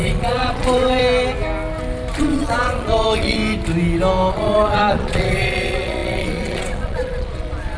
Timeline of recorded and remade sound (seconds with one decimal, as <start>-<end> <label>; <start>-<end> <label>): 0.0-1.0 remade; 1.0-2.2 recorded; 2.2-3.4 remade; 3.4-4.3 recorded; 4.3-7.8 remade